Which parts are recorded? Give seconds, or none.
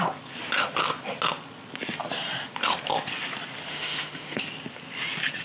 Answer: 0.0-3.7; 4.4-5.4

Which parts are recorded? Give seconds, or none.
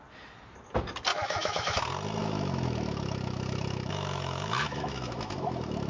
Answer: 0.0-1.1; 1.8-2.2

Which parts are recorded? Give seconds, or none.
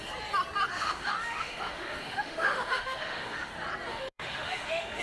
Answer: 0.0-0.7; 3.5-3.9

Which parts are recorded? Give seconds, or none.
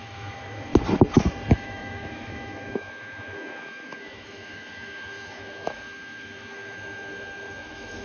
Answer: 0.7-1.5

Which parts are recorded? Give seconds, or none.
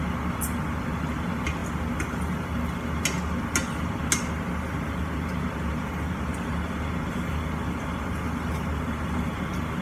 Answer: 0.0-9.8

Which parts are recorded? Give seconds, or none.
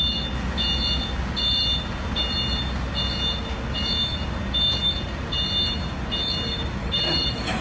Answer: 0.0-6.8